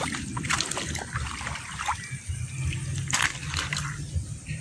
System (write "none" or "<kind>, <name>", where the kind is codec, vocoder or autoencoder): none